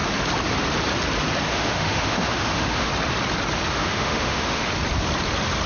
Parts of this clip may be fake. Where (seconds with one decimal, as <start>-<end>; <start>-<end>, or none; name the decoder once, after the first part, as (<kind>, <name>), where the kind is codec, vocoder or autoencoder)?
1.5-2.9 (autoencoder, DAC-VAE); 3.7-4.7

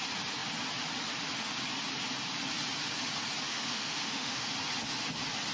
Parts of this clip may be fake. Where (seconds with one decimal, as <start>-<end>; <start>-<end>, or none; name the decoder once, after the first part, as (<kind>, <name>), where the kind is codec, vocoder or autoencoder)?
3.5-4.5 (autoencoder, DAC-VAE)

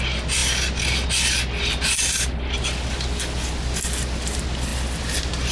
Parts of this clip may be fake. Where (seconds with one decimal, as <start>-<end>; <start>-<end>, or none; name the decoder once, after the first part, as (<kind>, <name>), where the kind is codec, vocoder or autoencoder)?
none

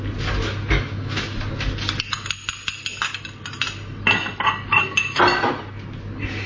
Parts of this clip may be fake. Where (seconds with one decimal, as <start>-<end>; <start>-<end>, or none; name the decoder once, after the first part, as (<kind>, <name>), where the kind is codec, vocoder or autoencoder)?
4.7-5.2 (autoencoder, DAC-VAE)

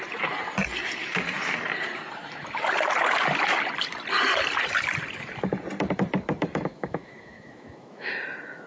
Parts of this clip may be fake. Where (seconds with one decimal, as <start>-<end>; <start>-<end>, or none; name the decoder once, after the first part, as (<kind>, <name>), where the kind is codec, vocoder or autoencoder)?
6.7-8.1 (autoencoder, DAC-VAE)

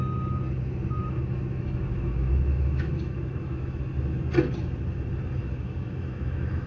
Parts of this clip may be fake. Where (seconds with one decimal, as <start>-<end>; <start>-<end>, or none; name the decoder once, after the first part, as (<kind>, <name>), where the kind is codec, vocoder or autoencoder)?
1.0-3.8 (autoencoder, DAC-VAE); 5.4-6.7

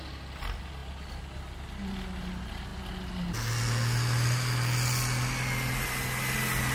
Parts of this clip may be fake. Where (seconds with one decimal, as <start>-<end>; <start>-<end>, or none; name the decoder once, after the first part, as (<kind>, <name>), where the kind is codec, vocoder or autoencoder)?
none

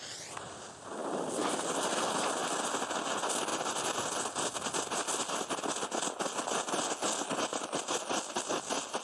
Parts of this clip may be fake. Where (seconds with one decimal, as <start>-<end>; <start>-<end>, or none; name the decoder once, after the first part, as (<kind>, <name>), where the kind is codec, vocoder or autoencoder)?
none